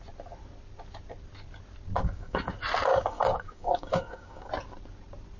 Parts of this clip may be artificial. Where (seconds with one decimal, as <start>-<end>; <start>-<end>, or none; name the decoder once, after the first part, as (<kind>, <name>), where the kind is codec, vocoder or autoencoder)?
2.0-2.5 (codec, DAC); 2.9-4.5